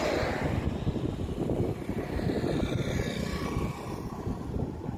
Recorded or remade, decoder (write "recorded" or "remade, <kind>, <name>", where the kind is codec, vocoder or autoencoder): recorded